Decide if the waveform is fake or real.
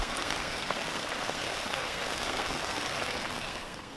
fake